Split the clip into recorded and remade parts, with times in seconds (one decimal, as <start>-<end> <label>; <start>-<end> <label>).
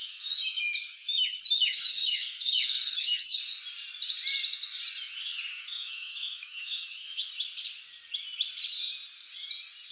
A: 0.0-3.4 remade; 3.4-5.5 recorded; 5.5-7.3 remade; 7.3-9.9 recorded